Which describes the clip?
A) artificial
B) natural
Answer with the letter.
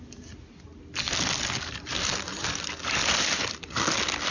B